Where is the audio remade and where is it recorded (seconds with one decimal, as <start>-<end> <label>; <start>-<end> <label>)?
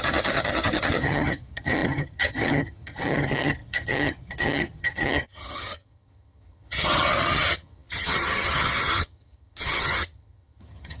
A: 0.0-11.0 remade